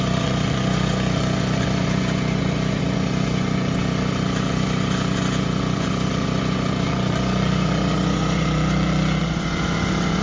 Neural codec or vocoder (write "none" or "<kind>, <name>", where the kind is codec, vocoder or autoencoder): vocoder, Vocos